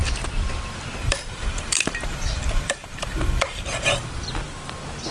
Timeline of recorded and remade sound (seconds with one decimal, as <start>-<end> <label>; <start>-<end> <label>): 0.0-1.0 recorded; 1.0-4.1 remade; 4.1-5.1 recorded